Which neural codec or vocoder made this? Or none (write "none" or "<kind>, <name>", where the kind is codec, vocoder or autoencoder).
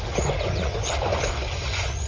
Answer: vocoder, Vocos